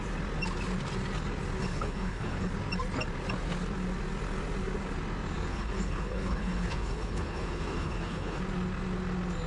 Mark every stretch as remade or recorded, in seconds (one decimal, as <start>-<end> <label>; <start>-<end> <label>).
0.0-1.6 recorded; 1.6-2.5 remade; 2.5-5.5 recorded; 5.5-8.4 remade; 8.4-9.5 recorded